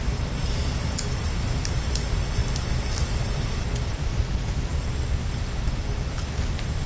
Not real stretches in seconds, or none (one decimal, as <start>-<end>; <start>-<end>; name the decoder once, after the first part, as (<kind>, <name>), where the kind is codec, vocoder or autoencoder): 4.0-4.7 (autoencoder, DAC-VAE)